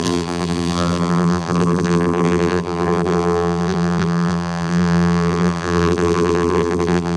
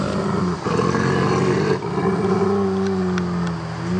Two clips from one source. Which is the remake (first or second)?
first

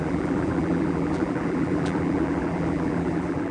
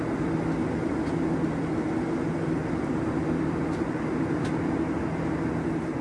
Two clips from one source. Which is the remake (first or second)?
first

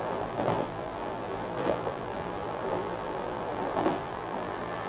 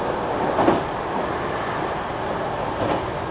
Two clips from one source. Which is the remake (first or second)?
first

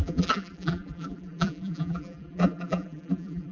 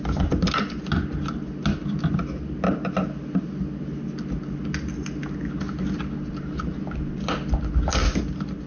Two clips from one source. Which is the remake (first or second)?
first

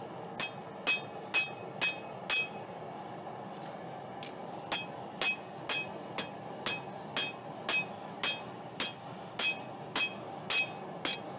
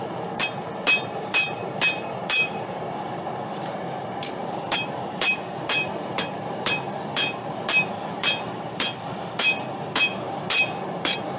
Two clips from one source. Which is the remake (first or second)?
second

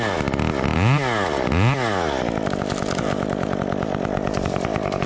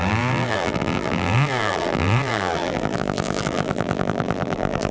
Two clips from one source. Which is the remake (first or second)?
second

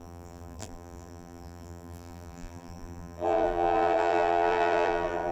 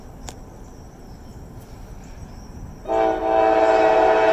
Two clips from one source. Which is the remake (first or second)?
first